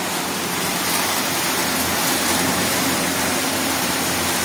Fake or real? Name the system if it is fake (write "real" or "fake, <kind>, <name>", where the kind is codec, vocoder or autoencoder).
fake, vocoder, BigVGAN v2